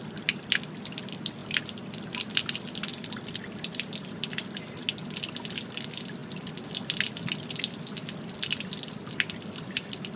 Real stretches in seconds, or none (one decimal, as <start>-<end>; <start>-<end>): 0.0-10.2